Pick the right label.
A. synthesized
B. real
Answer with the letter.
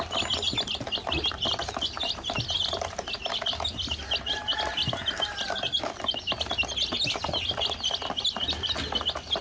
B